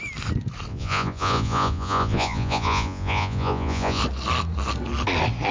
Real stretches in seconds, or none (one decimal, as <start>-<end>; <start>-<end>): 0.0-0.7; 4.0-5.5